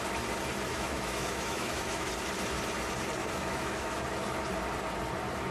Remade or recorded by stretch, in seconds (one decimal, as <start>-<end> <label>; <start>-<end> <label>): 0.0-0.7 recorded; 0.7-2.1 remade; 2.1-3.2 recorded; 3.2-4.0 remade; 4.0-5.5 recorded